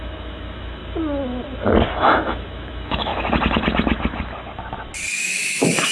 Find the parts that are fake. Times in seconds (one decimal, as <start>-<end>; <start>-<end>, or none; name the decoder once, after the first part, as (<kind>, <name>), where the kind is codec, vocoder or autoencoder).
0.0-0.8 (autoencoder, DAC-VAE); 1.9-3.1; 5.2-5.9